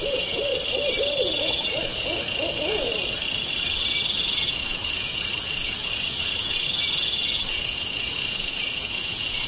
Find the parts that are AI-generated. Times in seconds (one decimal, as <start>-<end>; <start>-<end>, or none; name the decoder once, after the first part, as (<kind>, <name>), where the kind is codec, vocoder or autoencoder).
0.0-0.5 (vocoder, Vocos); 1.4-2.9; 4.3-9.5